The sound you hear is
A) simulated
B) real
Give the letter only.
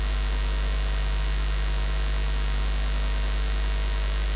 B